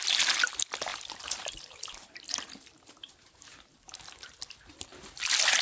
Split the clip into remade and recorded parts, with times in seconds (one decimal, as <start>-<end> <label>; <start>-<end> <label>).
0.0-0.9 recorded; 0.9-4.3 remade; 4.3-5.6 recorded